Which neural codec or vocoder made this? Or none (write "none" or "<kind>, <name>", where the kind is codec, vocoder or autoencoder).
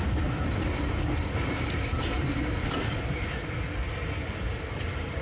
none